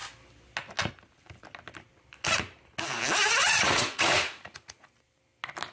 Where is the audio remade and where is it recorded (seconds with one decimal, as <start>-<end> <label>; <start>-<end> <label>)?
0.0-3.4 recorded; 3.4-4.9 remade; 4.9-5.7 recorded